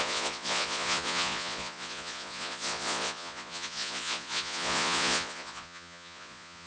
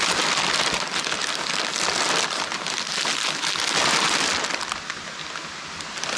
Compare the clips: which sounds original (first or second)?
second